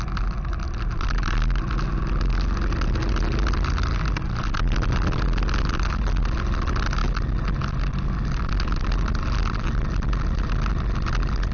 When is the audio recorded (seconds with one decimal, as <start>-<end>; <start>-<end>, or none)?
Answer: 0.0-11.5

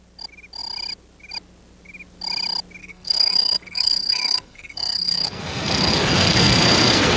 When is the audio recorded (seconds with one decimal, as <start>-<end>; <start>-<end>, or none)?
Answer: 0.0-2.8